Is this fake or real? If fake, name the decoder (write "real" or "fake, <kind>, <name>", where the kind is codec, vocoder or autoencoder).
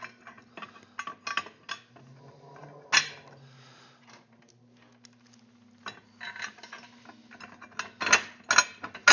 real